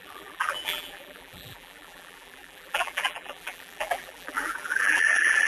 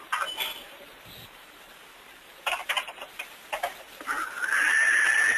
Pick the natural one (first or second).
second